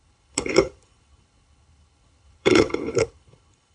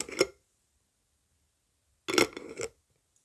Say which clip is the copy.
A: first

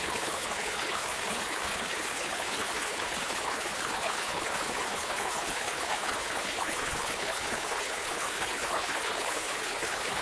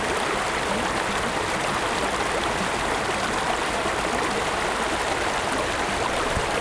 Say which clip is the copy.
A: first